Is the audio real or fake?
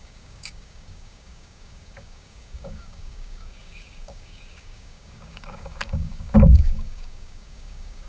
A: fake